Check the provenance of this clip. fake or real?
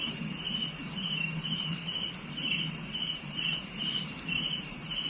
fake